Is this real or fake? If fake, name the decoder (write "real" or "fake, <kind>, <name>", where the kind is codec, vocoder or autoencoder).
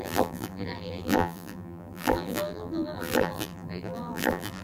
fake, vocoder, BigVGAN v2